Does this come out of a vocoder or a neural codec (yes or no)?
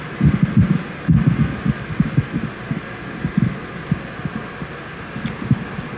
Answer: no